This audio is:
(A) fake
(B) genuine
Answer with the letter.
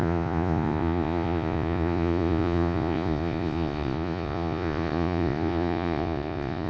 A